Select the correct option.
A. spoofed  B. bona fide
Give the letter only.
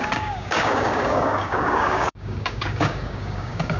A